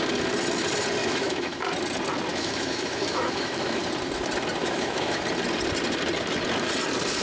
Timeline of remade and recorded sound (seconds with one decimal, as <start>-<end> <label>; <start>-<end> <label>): 0.0-1.0 recorded; 1.0-1.6 remade; 1.6-2.3 recorded; 2.3-3.8 remade; 3.8-4.6 recorded; 4.6-5.2 remade; 5.2-7.2 recorded